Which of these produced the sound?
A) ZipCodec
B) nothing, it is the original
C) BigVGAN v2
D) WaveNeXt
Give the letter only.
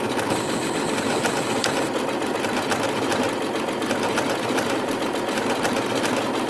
B